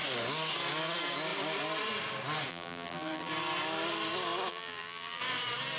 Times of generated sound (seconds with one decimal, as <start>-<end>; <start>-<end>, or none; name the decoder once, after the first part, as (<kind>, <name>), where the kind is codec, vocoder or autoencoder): 2.5-3.3 (vocoder, BigVGAN v2); 4.5-5.2